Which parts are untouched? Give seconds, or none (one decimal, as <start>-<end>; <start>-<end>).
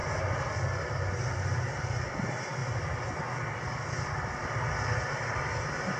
0.0-6.0